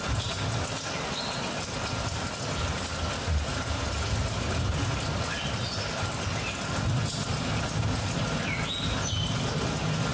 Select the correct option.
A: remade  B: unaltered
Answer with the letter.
B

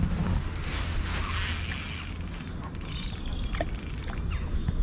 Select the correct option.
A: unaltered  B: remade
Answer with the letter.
A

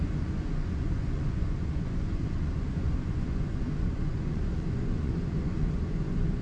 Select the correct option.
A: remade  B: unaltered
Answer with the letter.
A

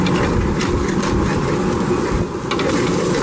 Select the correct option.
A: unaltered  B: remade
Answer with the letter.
A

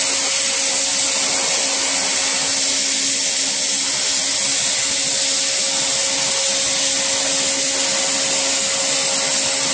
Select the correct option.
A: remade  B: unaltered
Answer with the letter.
B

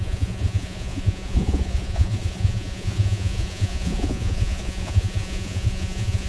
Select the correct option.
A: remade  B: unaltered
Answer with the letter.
A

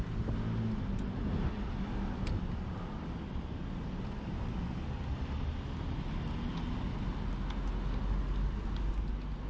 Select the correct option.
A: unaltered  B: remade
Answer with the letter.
A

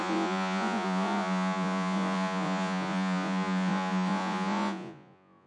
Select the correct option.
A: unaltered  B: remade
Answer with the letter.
B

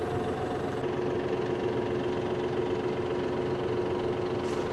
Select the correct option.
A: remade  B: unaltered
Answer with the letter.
B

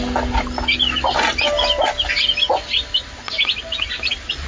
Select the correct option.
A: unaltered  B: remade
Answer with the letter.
A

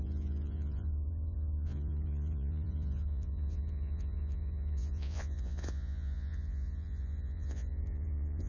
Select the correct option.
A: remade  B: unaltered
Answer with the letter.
A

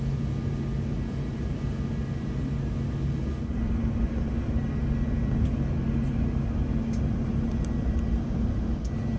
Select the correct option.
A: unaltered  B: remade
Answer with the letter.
A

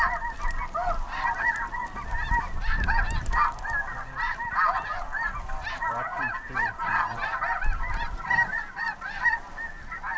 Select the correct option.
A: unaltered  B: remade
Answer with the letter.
A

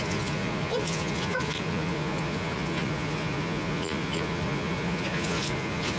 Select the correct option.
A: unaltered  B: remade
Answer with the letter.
B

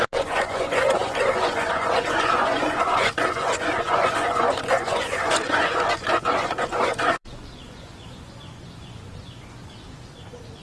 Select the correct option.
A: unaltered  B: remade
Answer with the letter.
B